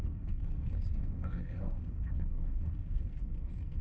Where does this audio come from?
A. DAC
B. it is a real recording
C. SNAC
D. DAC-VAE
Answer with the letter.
C